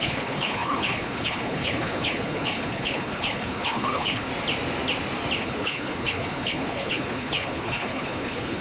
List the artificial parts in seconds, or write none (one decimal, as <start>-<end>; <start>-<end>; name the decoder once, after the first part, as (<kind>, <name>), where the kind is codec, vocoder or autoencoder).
0.0-4.3 (codec, HILCodec); 5.4-8.6